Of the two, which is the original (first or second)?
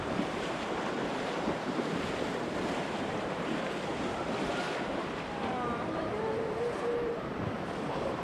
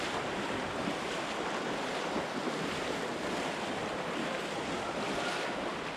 second